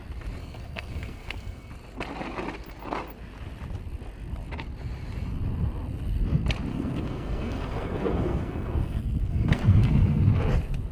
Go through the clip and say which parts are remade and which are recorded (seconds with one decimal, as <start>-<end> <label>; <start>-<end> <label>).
0.0-0.4 recorded; 0.4-1.7 remade; 1.7-6.7 recorded; 6.7-10.2 remade; 10.2-10.9 recorded